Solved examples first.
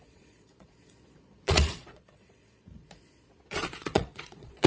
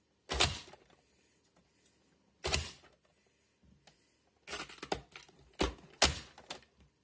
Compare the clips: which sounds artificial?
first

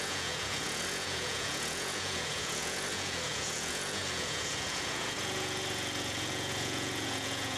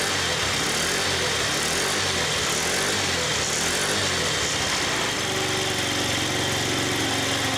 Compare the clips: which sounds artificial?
first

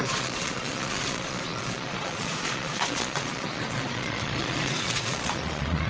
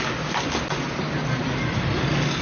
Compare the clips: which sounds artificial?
first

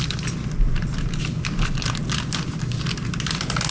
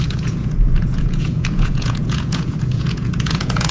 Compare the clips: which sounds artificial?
second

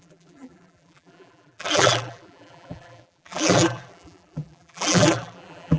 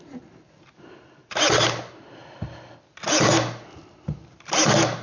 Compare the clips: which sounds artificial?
first